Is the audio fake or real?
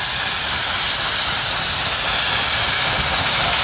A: real